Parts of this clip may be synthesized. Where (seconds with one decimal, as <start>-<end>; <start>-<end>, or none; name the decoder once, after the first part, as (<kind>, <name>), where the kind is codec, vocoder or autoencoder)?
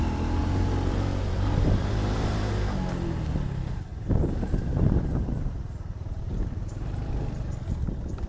0.4-2.5 (vocoder, BigVGAN v2); 3.9-7.1